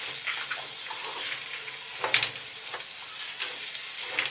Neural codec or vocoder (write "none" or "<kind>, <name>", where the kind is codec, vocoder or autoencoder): none